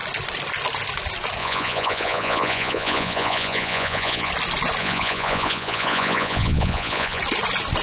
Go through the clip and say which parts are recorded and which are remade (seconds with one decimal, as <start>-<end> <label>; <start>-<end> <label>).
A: 0.0-1.4 recorded; 1.4-4.3 remade; 4.3-4.8 recorded; 4.8-7.2 remade; 7.2-7.8 recorded